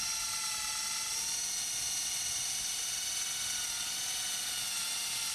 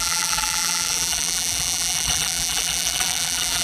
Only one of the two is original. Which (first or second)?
first